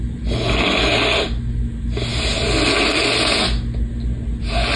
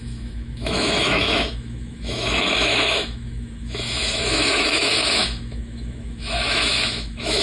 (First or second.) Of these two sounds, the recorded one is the first